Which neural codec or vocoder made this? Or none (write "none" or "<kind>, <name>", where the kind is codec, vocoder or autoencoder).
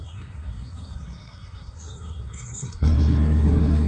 codec, SNAC